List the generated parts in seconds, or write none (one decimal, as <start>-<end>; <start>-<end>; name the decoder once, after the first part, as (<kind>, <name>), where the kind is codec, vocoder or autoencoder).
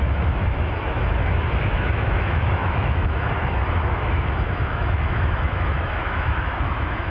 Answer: 0.0-7.1 (autoencoder, DAC-VAE)